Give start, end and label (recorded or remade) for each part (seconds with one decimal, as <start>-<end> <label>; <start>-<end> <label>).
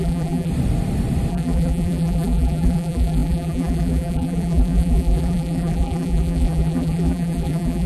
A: 0.0-0.5 remade; 0.5-1.3 recorded; 1.3-7.9 remade